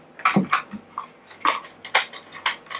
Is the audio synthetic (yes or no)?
no